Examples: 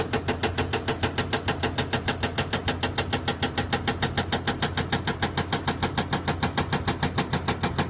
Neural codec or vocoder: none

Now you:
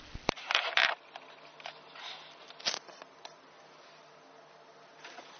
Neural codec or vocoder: none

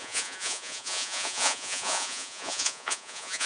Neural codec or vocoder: vocoder, Vocos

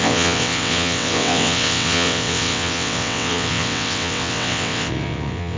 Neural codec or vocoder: vocoder, WaveNeXt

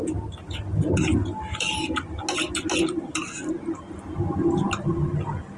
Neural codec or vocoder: none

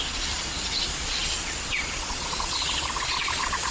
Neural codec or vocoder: vocoder, Vocos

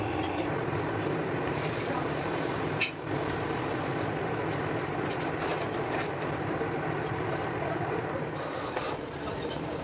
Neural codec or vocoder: vocoder, BigVGAN v2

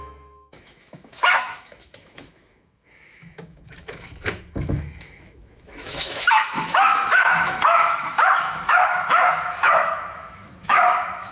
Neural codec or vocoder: autoencoder, DAC-VAE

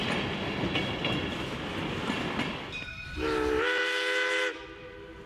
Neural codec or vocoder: none